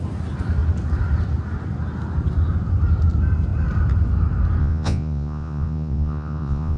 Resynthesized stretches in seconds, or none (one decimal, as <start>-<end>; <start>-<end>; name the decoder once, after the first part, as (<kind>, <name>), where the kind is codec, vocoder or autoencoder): 4.6-6.8 (vocoder, Vocos)